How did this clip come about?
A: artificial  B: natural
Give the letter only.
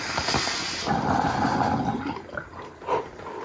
B